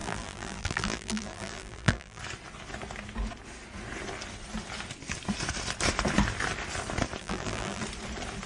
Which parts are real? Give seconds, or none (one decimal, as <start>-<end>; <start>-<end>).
2.2-7.2; 7.8-8.5